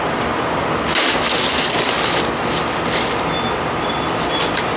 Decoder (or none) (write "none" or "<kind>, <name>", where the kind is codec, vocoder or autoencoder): none